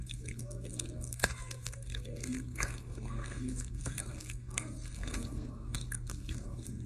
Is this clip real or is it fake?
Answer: fake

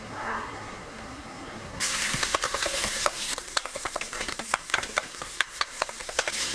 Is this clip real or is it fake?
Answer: fake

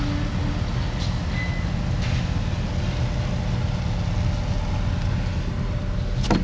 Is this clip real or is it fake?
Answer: real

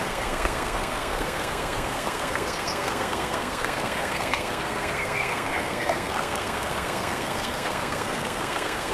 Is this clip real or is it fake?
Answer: fake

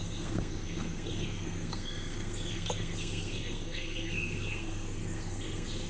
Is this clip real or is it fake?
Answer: fake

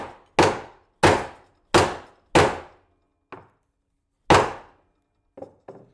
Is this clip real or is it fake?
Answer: real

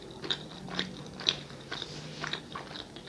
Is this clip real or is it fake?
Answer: real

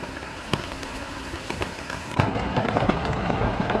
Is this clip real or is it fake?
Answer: fake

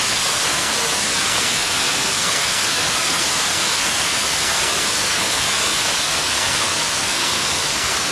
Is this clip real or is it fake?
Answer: fake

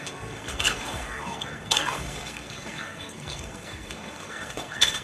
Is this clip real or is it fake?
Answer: fake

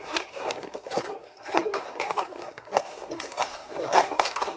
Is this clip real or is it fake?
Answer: fake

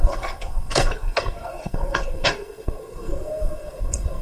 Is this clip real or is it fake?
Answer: fake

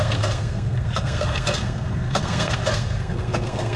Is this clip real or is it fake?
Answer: fake